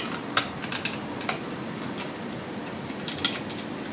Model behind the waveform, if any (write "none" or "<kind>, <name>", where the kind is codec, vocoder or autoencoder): none